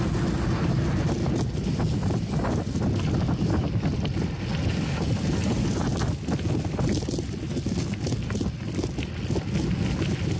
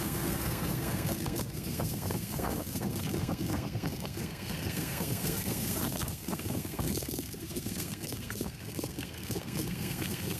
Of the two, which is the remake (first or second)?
second